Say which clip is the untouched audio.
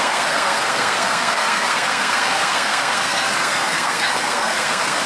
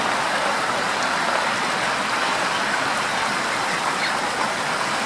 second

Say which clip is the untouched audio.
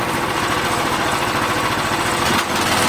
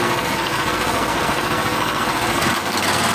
first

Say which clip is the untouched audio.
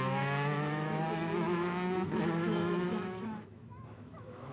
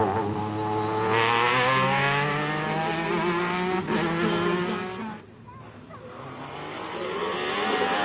second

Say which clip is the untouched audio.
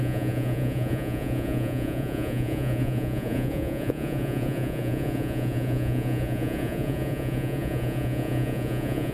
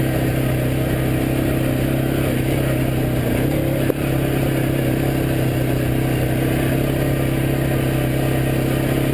second